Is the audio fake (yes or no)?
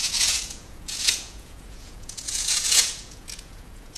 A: yes